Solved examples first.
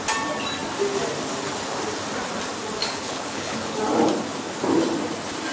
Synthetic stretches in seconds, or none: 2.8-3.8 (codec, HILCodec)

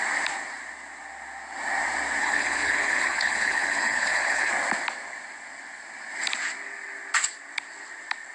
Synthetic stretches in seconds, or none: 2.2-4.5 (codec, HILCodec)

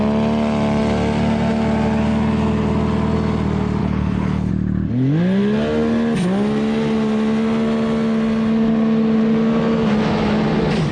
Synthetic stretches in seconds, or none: 3.8-4.5 (codec, HILCodec)

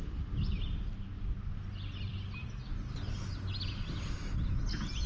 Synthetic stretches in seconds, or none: none

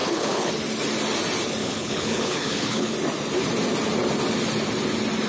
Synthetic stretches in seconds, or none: 0.0-0.5 (codec, HILCodec); 1.6-2.9